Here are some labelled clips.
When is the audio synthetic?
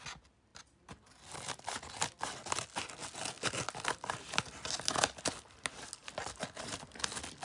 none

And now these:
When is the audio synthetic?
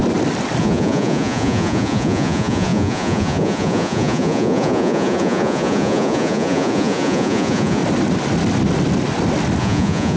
0.6-7.8 (vocoder, Vocos); 9.6-10.2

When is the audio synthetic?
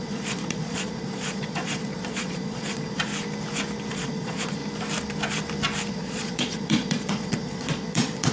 0.0-3.1 (vocoder, Vocos); 3.9-4.6; 5.9-8.3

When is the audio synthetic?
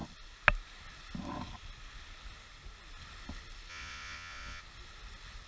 3.7-4.6 (vocoder, Vocos)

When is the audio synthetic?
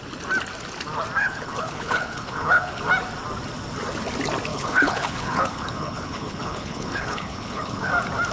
1.2-2.8 (codec, HILCodec); 4.5-7.9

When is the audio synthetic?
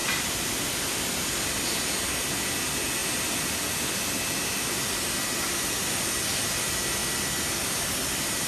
0.0-1.9 (vocoder, BigVGAN v2); 3.0-3.5; 7.0-8.5